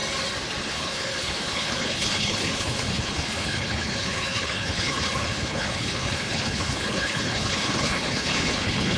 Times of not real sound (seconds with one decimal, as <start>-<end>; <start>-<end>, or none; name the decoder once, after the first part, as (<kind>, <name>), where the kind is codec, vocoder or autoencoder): 0.6-9.0 (codec, HILCodec)